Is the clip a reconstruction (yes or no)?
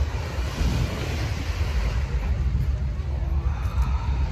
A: no